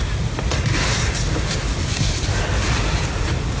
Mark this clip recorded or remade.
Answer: recorded